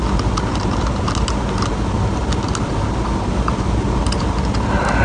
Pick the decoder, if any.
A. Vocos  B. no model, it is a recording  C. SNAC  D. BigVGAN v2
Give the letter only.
B